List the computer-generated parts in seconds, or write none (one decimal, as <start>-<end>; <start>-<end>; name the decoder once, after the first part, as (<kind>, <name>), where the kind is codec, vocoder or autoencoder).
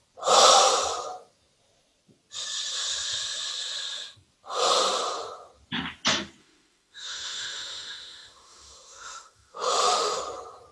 6.4-10.2 (autoencoder, DAC-VAE)